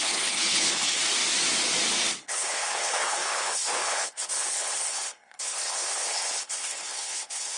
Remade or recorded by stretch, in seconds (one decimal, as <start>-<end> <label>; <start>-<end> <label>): 0.0-1.0 remade; 1.0-2.2 recorded; 2.2-7.6 remade